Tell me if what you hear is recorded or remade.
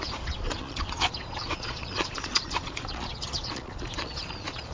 remade